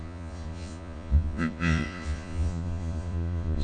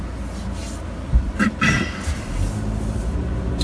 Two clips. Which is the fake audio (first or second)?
first